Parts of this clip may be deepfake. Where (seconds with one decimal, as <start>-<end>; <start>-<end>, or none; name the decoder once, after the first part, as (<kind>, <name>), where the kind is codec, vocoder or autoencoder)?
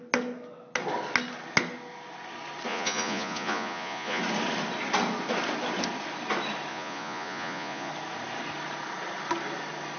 2.7-4.2 (vocoder, Vocos); 6.7-7.9